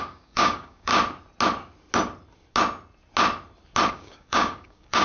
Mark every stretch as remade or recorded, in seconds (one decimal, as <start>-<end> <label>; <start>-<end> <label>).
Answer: 0.0-0.9 remade; 0.9-3.9 recorded; 3.9-5.0 remade